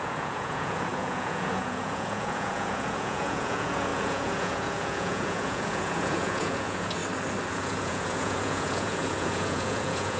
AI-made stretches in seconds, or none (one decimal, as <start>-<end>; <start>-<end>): 0.0-7.0; 7.5-10.2